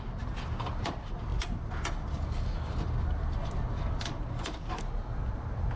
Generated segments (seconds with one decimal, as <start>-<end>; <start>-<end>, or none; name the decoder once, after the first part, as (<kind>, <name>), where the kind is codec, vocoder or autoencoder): none